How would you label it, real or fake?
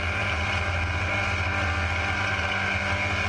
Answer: real